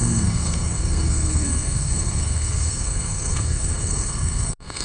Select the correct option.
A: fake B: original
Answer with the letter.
A